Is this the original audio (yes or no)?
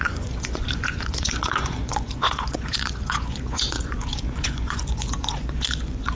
no